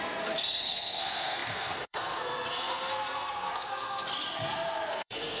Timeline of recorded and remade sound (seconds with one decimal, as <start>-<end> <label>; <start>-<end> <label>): 0.0-4.1 remade; 4.1-4.9 recorded; 4.9-5.4 remade

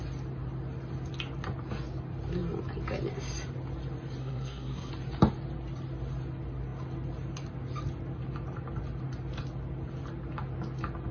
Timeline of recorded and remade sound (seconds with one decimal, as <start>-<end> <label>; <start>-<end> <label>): 0.0-4.2 recorded; 4.2-4.9 remade; 4.9-11.1 recorded

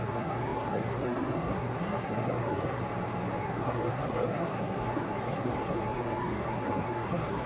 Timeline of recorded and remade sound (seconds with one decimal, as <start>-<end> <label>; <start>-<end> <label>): 0.0-2.8 remade; 2.8-3.4 recorded; 3.4-7.5 remade

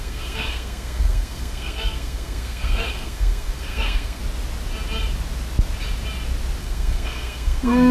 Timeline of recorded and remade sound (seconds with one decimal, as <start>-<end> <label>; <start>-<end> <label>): 0.0-4.2 remade; 4.2-6.6 recorded; 6.6-7.9 remade

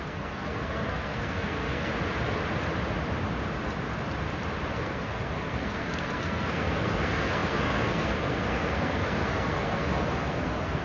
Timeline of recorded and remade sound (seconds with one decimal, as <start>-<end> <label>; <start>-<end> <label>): 0.0-1.9 remade; 1.9-4.7 recorded; 4.7-10.8 remade

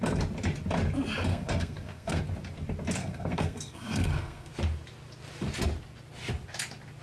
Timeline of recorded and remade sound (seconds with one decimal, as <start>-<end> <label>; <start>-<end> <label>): 0.0-1.3 recorded; 1.3-2.2 remade; 2.2-3.0 recorded; 3.0-4.5 remade; 4.5-7.0 recorded